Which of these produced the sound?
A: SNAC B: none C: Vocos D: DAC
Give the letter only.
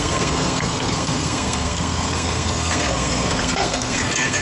A